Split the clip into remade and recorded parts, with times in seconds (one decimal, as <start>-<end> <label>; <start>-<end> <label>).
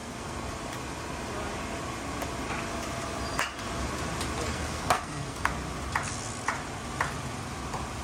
0.0-0.5 remade; 0.5-4.5 recorded; 4.5-5.5 remade; 5.5-8.0 recorded